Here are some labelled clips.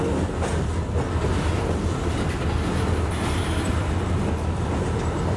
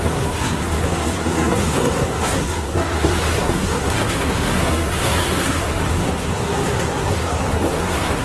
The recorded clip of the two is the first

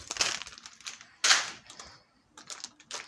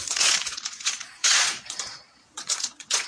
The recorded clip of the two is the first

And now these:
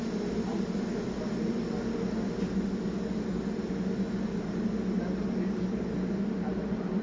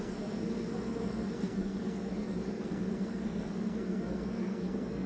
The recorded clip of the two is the first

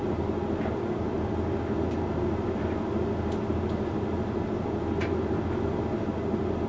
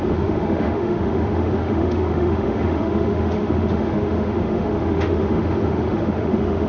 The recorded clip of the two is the first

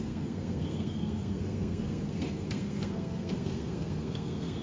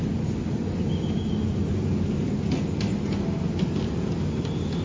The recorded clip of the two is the second